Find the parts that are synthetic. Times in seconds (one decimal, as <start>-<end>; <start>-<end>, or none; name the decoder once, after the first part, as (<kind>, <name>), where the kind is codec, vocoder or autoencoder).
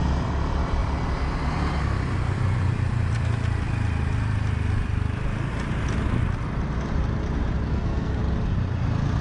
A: 7.7-8.2 (codec, SNAC)